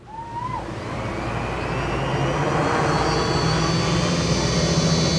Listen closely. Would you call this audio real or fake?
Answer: real